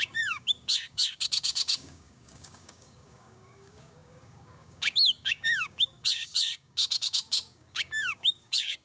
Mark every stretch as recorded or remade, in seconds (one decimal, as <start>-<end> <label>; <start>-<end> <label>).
0.0-8.8 remade